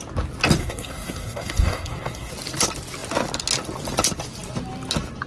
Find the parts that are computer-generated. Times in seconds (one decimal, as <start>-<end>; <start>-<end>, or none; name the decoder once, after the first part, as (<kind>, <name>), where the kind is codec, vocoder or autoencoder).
0.6-2.3 (codec, SNAC)